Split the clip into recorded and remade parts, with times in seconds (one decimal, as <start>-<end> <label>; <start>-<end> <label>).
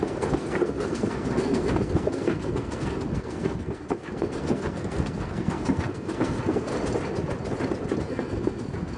0.0-6.7 remade; 6.7-8.0 recorded; 8.0-9.0 remade